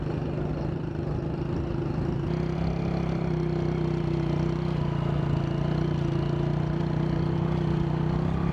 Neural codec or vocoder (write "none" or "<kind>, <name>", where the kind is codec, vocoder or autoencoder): none